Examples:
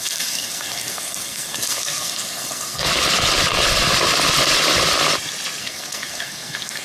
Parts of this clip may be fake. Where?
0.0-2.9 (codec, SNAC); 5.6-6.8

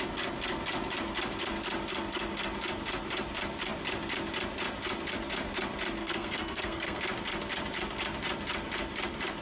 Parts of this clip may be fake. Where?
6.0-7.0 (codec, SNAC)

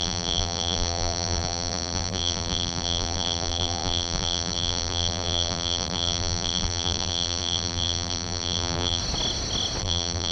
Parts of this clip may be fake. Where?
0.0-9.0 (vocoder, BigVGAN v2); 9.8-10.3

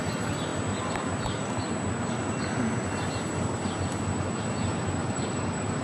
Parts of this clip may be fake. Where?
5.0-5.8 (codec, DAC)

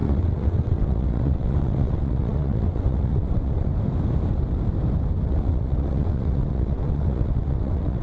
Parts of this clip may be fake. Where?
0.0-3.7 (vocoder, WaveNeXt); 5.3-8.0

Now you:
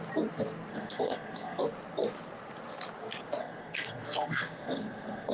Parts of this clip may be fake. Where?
0.7-1.6 (codec, SNAC); 3.4-5.3

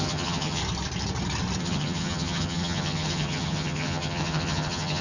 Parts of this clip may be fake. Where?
0.0-0.6 (vocoder, HiFi-GAN); 1.6-5.0

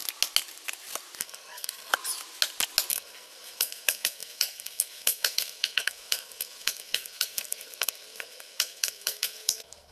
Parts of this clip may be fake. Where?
1.2-1.9 (codec, SNAC); 2.9-9.9